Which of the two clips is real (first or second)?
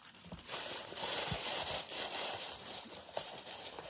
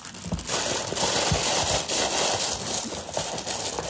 second